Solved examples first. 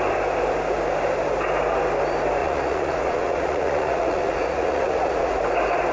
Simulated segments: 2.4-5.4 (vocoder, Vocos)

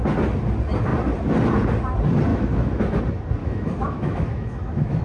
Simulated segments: 2.3-3.0 (autoencoder, DAC-VAE); 3.4-5.0

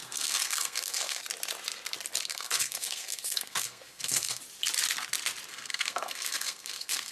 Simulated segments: 0.0-1.2 (codec, SNAC); 2.3-4.4; 5.5-7.1

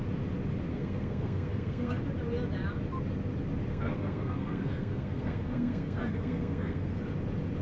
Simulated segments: 0.7-2.0 (codec, SNAC); 3.7-7.0

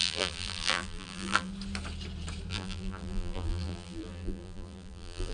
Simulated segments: 0.0-1.5 (vocoder, BigVGAN v2); 2.5-5.3